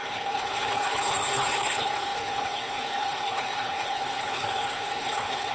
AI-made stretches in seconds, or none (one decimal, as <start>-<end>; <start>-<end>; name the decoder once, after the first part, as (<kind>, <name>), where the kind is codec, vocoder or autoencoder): 0.0-5.5 (codec, HILCodec)